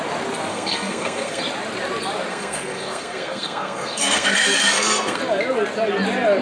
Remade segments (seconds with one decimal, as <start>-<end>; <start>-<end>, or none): 0.5-1.4; 2.3-5.2